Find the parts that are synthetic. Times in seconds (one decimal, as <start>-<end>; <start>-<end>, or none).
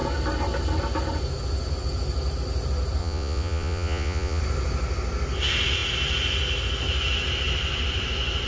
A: 3.0-4.4